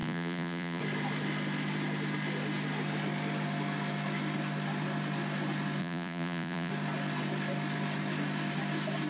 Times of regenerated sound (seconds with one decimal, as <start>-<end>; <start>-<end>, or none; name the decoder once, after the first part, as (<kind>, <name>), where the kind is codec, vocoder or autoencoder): 0.0-0.8 (vocoder, Vocos); 5.8-6.7

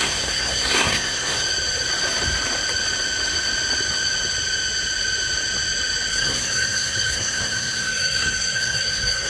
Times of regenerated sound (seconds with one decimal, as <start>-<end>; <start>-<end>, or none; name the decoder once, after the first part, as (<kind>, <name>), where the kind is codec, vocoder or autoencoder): 0.0-1.4 (codec, SNAC); 6.1-9.3

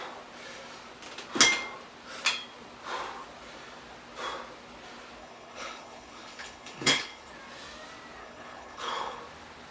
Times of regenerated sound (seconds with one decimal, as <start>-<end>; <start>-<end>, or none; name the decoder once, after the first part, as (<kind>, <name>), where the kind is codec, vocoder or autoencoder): 5.2-7.3 (codec, HILCodec); 8.2-9.2

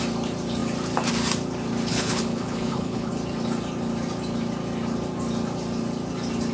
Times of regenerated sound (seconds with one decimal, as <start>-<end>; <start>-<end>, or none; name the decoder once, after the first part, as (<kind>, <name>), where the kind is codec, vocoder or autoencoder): 1.9-3.1 (codec, HILCodec)

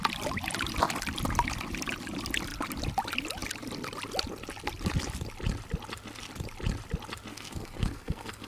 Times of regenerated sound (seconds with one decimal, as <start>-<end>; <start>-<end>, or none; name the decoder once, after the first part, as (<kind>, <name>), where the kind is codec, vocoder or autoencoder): 7.3-8.5 (codec, SNAC)

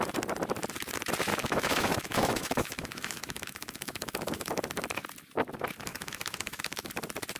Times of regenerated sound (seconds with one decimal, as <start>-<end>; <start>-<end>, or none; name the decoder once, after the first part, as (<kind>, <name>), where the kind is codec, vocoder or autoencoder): 1.3-4.5 (autoencoder, DAC-VAE); 5.9-6.9